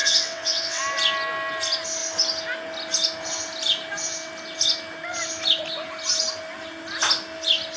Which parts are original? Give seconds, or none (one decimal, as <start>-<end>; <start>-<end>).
0.8-7.8